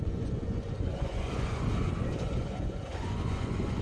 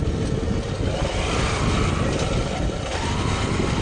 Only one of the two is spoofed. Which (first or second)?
first